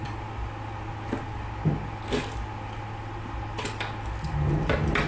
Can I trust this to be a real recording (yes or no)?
yes